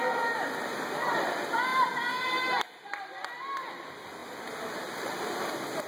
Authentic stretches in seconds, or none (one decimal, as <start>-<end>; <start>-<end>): 0.0-5.9